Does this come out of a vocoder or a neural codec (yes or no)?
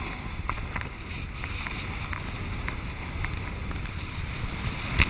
no